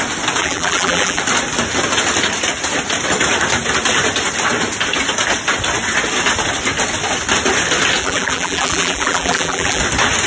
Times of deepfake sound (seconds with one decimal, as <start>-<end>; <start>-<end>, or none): 0.4-1.2; 8.0-9.8